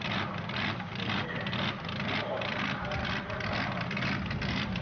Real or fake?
real